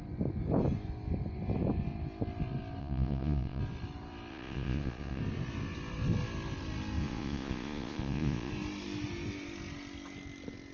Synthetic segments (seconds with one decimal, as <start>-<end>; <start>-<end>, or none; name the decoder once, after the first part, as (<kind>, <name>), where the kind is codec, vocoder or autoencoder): 2.8-3.6 (vocoder, Vocos); 4.3-5.2; 7.0-8.5